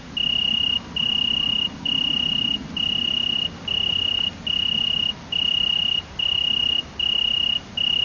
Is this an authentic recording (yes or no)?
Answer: yes